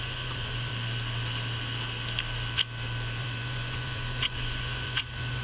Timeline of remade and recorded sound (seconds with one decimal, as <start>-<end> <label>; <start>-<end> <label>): 0.0-0.7 remade; 0.7-3.2 recorded; 3.2-5.4 remade